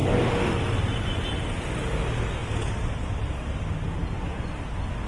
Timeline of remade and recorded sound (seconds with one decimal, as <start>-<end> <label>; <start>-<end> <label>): 0.0-5.1 recorded